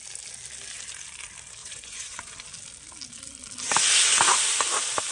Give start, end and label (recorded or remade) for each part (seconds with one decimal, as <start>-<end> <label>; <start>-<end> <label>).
0.0-1.6 recorded; 1.6-2.3 remade; 2.3-5.1 recorded